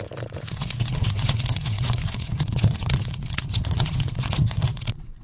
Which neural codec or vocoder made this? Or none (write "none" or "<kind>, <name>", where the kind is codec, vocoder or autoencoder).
vocoder, WaveNeXt